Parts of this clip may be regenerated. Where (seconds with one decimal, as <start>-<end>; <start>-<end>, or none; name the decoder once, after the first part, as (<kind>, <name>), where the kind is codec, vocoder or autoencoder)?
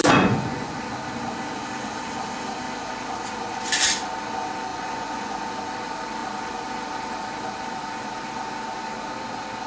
0.0-0.8 (vocoder, Vocos); 4.7-5.5